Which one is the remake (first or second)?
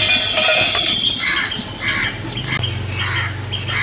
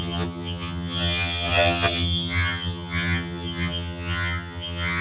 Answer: second